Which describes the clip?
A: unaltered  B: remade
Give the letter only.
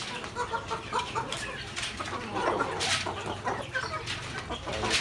A